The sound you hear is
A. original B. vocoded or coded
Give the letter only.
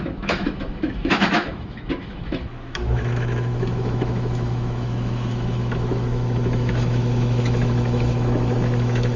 B